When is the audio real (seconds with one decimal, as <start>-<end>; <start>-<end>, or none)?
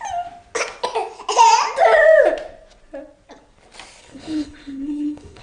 0.0-4.0